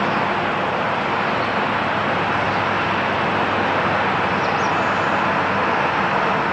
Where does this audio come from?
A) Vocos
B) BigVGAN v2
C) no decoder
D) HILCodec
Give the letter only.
C